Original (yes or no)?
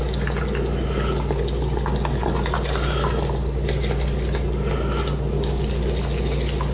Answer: yes